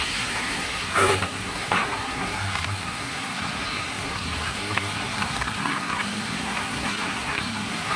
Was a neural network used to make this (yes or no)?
yes